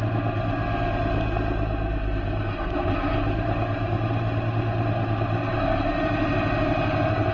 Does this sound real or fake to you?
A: fake